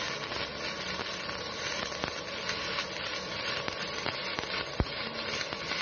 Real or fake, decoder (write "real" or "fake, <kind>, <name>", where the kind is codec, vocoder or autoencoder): real